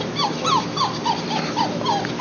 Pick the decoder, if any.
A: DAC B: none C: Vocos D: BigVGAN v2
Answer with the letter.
B